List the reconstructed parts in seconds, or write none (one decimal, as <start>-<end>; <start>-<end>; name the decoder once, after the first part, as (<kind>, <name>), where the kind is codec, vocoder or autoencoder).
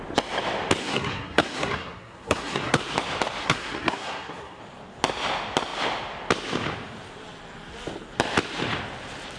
0.8-2.8 (codec, SNAC); 3.4-4.6